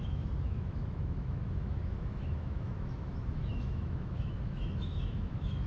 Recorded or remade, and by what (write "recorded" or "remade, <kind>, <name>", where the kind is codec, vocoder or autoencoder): remade, autoencoder, DAC-VAE